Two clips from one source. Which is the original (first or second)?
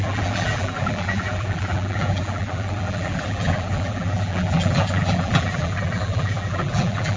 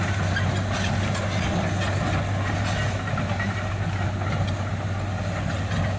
second